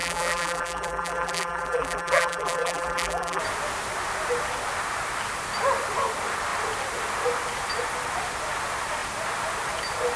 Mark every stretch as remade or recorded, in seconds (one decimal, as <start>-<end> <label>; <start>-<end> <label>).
0.0-3.4 remade; 3.4-10.2 recorded